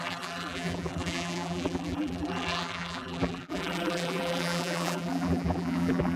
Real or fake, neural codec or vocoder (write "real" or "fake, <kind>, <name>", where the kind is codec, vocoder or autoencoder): fake, vocoder, BigVGAN v2